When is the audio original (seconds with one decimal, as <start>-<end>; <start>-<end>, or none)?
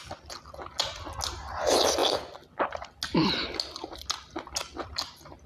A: 0.0-5.5